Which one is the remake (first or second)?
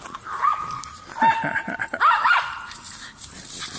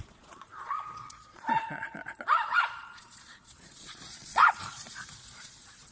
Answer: second